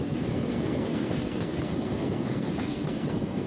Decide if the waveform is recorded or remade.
remade